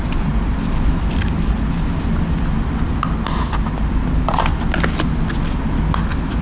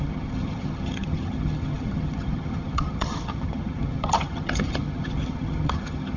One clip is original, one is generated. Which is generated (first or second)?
second